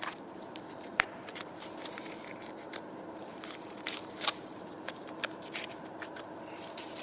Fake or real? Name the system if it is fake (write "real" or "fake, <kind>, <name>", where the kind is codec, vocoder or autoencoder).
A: fake, vocoder, BigVGAN v2